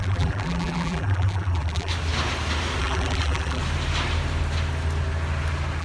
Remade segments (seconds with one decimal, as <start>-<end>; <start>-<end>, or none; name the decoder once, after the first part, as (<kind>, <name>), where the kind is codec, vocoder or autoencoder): 0.0-1.9 (vocoder, BigVGAN v2); 2.8-3.6